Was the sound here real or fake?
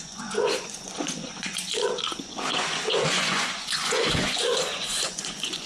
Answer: fake